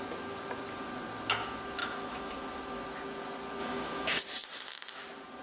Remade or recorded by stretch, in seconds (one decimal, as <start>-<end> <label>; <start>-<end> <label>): 0.0-1.8 recorded; 1.8-2.3 remade; 2.3-3.6 recorded; 3.6-4.2 remade; 4.2-5.4 recorded